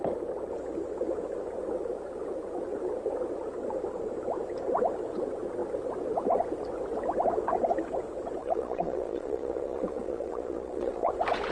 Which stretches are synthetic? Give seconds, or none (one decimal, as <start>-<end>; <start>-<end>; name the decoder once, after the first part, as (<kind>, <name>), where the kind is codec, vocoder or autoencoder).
8.4-11.1 (vocoder, Vocos)